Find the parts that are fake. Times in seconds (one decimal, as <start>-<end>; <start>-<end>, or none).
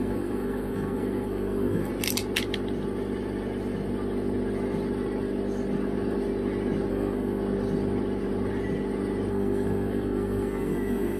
0.0-1.9; 6.9-7.4; 9.3-11.2